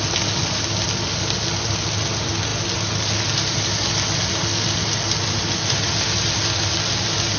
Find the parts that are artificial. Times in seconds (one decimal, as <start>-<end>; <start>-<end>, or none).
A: none